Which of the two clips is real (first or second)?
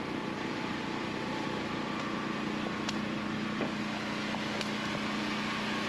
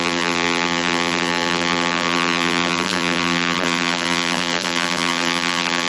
first